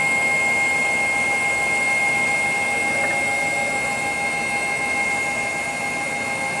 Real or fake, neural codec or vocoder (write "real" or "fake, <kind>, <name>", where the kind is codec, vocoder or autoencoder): real